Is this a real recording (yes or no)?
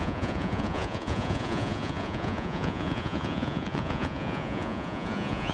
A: no